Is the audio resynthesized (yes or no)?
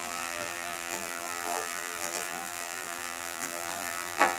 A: yes